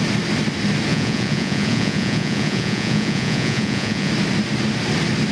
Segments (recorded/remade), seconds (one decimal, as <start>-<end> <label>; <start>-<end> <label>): 0.0-0.9 recorded; 0.9-4.1 remade; 4.1-5.3 recorded

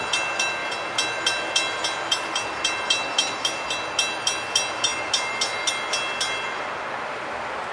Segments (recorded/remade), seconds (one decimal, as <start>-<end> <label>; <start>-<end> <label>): 0.0-7.7 recorded

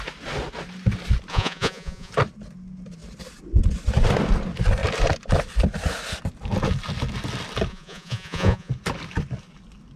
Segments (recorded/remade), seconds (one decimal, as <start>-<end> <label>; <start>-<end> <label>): 0.0-1.3 recorded; 1.3-2.1 remade; 2.1-7.7 recorded; 7.7-8.7 remade; 8.7-10.0 recorded

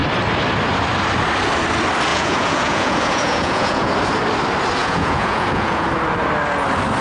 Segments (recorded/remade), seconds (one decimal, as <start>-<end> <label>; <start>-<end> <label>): 0.0-2.1 recorded; 2.1-3.9 remade; 3.9-4.8 recorded; 4.8-5.9 remade; 5.9-7.0 recorded

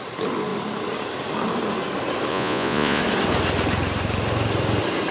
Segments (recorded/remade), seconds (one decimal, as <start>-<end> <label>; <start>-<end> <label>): 0.0-2.3 recorded; 2.3-3.0 remade; 3.0-5.1 recorded

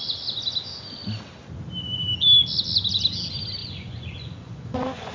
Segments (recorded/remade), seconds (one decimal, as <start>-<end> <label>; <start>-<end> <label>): 0.0-3.6 recorded; 3.6-5.1 remade

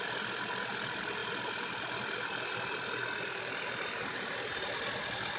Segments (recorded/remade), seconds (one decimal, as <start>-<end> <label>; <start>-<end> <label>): 0.0-5.4 recorded

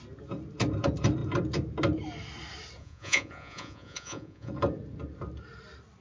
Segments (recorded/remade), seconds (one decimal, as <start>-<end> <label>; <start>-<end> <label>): 0.0-2.8 recorded; 2.8-4.5 remade; 4.5-6.0 recorded